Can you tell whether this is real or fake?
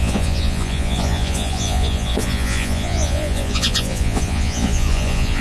fake